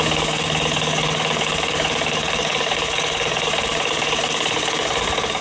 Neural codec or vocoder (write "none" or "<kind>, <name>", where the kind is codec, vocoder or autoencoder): codec, DAC